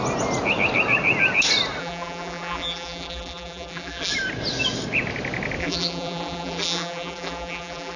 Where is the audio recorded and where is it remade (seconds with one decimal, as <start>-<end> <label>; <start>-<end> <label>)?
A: 0.0-1.8 recorded; 1.8-4.1 remade; 4.1-5.6 recorded; 5.6-8.0 remade

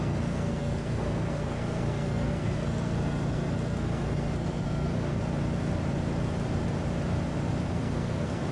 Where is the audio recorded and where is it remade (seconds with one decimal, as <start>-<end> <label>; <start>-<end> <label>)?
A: 0.0-5.2 remade; 5.2-7.7 recorded; 7.7-8.5 remade

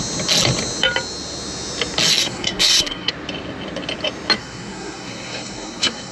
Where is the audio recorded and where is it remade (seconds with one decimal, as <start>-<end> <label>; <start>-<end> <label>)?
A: 0.0-2.2 recorded; 2.2-3.1 remade; 3.1-4.4 recorded; 4.4-6.1 remade

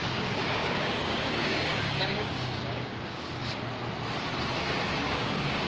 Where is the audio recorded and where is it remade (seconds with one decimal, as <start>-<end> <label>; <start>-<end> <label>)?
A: 0.0-3.4 remade; 3.4-5.1 recorded; 5.1-5.7 remade

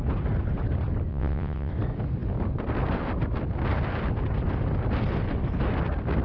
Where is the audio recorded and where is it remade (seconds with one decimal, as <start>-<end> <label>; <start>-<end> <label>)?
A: 0.0-1.1 recorded; 1.1-1.7 remade; 1.7-6.2 recorded